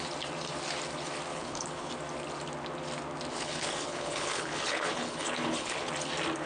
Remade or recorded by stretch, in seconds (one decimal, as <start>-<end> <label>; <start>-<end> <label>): 0.0-1.3 recorded; 1.3-1.9 remade; 1.9-3.3 recorded; 3.3-5.9 remade; 5.9-6.5 recorded